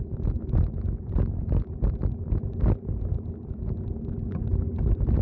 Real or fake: real